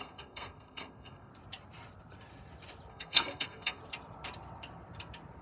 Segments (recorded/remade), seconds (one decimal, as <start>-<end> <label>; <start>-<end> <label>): 0.0-1.3 remade; 1.3-2.9 recorded; 2.9-3.8 remade; 3.8-5.4 recorded